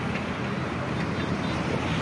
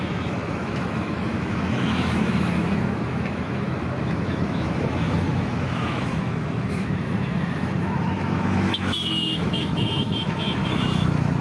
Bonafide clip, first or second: first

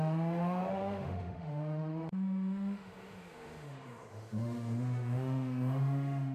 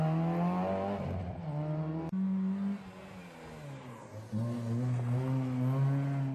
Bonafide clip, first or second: second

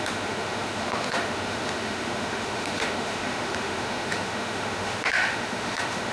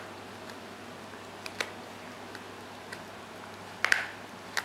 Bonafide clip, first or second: second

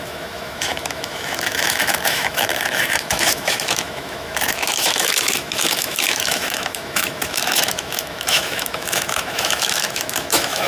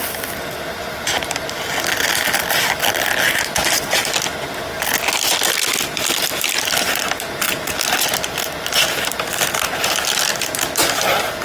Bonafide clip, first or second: second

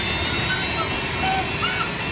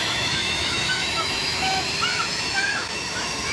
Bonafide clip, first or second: first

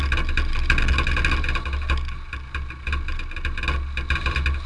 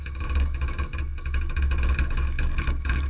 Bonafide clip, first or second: first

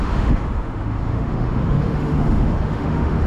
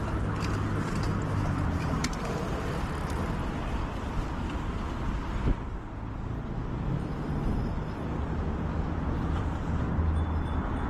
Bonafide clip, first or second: second